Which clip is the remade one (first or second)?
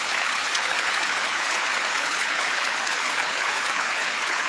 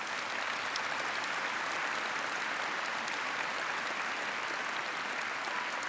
first